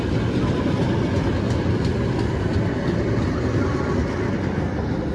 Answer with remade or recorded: recorded